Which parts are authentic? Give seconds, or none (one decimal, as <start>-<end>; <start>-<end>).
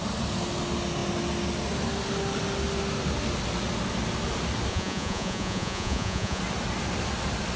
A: 0.0-4.7; 6.4-7.6